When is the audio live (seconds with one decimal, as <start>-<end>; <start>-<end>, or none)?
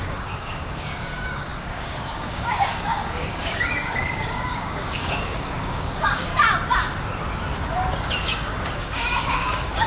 6.3-8.0